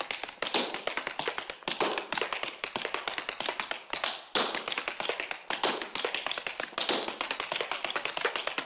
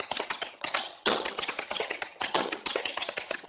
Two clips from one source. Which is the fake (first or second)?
second